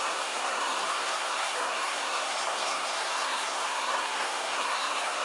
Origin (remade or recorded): remade